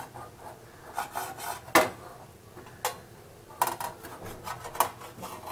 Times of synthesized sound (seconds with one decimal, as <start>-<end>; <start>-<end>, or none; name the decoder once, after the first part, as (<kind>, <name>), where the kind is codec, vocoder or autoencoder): none